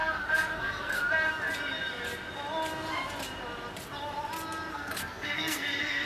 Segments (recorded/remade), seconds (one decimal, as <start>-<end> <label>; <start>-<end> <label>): 0.0-1.0 remade; 1.0-4.7 recorded; 4.7-6.1 remade